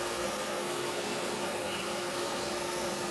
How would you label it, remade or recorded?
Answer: remade